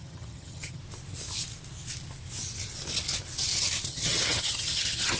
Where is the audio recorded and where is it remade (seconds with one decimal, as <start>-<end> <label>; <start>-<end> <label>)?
0.0-0.8 remade; 0.8-3.9 recorded; 3.9-5.2 remade